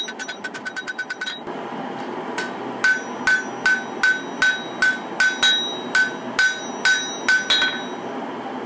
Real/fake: real